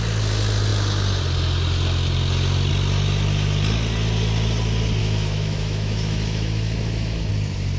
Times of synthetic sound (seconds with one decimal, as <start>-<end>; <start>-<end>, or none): 5.0-7.3